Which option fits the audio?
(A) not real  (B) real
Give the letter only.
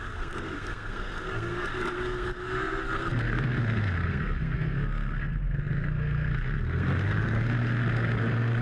A